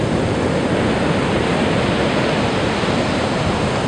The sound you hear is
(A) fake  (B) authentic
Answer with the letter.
B